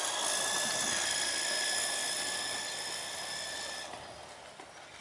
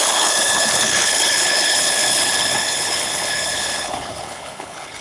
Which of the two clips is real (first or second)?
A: first